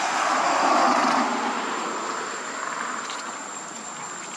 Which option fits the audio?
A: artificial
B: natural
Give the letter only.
B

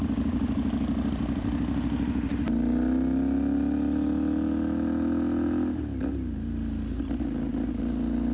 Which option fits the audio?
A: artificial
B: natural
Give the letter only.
B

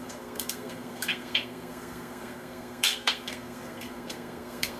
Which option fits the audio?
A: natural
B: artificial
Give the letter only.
B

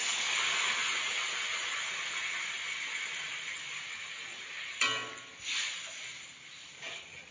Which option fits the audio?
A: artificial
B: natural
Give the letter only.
B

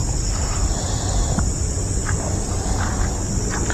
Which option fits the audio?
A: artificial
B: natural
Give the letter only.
B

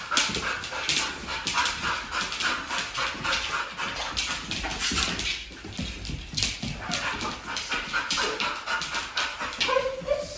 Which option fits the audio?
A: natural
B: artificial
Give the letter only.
A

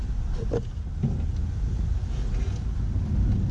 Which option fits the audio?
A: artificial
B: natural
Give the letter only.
B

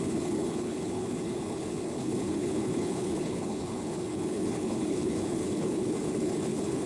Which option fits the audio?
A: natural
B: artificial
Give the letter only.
B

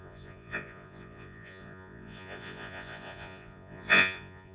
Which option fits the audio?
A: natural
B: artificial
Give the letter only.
B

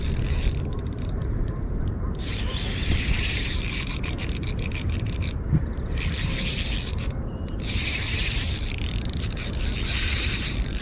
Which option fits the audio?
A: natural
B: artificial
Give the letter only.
B